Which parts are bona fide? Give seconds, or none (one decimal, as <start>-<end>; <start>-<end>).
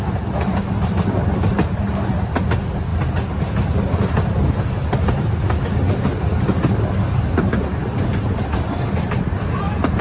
0.0-10.0